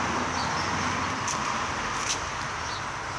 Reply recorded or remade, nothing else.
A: recorded